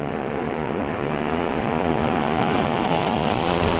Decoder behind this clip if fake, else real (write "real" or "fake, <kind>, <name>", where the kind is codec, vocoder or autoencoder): fake, vocoder, Vocos